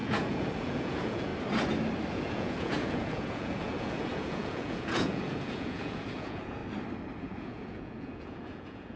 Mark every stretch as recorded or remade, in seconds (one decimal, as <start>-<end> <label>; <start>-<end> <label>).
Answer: 0.0-1.3 remade; 1.3-2.1 recorded; 2.1-6.6 remade; 6.6-7.2 recorded; 7.2-9.0 remade